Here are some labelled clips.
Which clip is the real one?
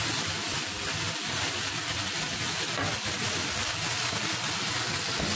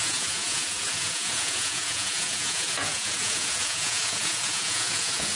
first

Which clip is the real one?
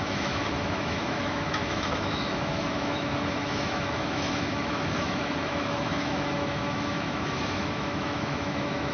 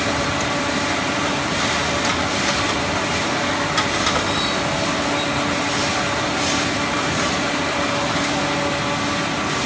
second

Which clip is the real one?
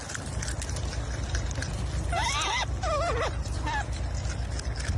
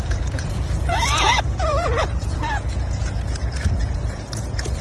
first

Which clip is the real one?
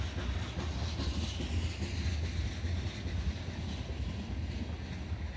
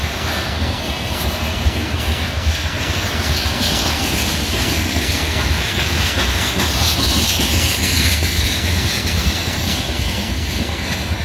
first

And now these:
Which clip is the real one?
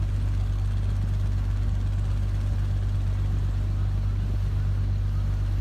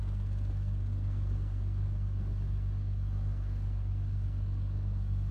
first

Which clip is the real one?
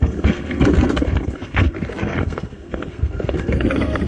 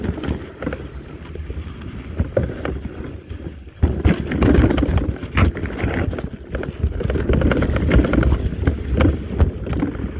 second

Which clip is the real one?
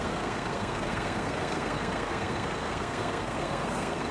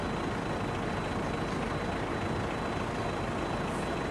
second